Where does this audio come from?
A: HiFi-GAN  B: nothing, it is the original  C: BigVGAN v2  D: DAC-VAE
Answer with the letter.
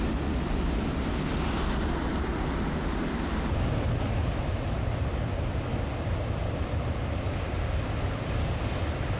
B